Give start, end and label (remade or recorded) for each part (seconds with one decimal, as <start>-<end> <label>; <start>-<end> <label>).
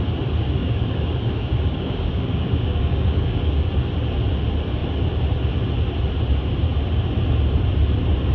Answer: 0.0-0.6 recorded; 0.6-3.7 remade; 3.7-8.3 recorded